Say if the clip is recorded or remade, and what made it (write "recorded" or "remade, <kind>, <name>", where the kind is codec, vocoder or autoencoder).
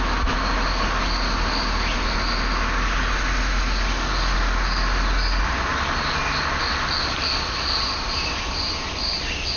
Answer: recorded